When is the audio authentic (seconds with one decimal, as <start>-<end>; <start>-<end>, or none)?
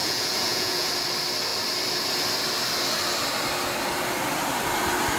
0.9-5.2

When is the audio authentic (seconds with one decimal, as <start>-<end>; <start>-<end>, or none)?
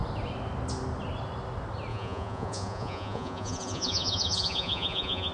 0.0-1.9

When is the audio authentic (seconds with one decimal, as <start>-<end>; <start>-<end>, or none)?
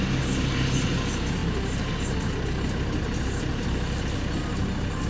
0.0-5.1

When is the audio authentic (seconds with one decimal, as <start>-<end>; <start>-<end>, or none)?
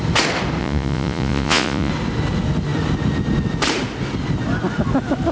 0.0-0.6; 1.9-5.3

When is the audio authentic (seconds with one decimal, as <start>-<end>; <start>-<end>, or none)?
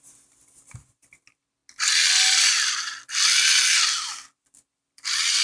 0.0-5.4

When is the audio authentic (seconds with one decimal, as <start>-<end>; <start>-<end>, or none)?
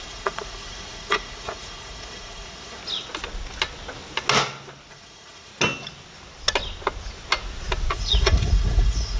2.8-4.9; 5.5-7.9